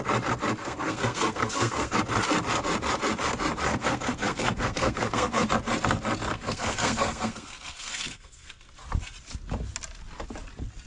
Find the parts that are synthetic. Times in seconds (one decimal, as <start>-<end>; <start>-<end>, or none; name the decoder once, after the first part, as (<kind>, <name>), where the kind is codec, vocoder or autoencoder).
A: 0.6-2.0 (codec, SNAC); 3.7-5.5; 6.3-8.6